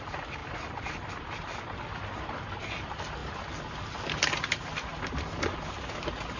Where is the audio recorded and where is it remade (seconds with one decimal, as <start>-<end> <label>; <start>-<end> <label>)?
0.0-6.4 recorded